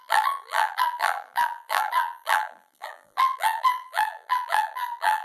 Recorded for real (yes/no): no